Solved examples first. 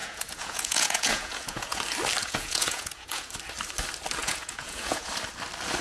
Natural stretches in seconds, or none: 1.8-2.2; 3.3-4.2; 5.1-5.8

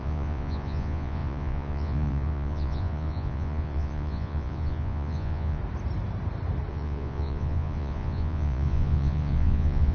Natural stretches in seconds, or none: 5.6-6.7